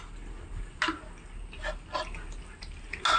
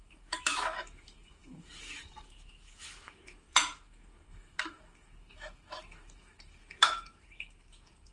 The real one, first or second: first